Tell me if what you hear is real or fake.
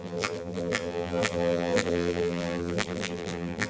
fake